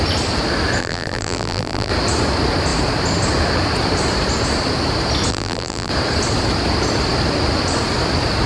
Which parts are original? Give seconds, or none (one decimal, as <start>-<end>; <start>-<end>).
0.0-0.8; 1.9-5.3; 5.9-8.5